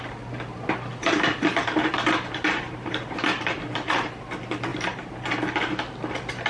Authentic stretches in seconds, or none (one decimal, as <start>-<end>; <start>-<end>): 0.0-0.5; 4.2-4.7; 5.3-6.5